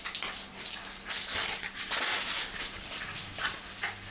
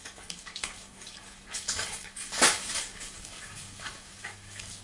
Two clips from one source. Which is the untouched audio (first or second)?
first